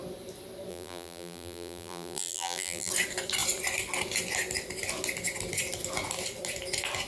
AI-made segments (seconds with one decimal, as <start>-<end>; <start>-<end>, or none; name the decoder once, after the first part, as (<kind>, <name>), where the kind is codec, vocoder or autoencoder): 0.7-2.9 (vocoder, BigVGAN v2)

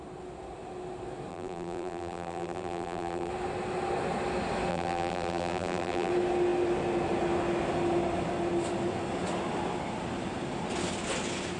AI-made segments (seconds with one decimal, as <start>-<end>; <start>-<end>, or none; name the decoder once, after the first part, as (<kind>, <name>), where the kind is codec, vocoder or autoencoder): 1.3-3.3 (vocoder, BigVGAN v2); 4.7-6.1

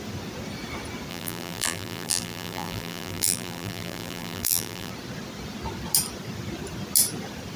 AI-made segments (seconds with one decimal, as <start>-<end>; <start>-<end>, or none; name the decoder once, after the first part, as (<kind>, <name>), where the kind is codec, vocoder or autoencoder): 1.1-4.9 (vocoder, BigVGAN v2)